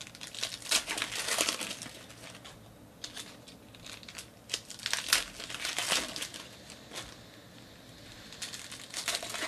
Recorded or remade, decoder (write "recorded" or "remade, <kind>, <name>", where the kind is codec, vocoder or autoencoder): recorded